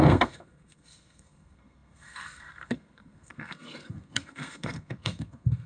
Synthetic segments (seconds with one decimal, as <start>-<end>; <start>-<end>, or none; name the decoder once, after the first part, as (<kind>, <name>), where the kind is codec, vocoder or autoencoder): 0.0-5.7 (codec, SNAC)